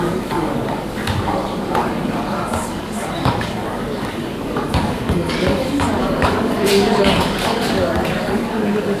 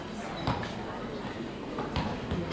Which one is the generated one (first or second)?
first